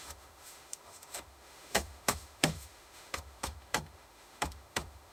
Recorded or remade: remade